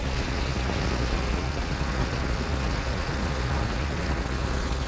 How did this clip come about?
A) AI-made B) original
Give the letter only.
A